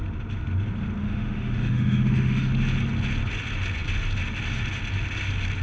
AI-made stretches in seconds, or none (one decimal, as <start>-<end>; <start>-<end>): 1.0-2.5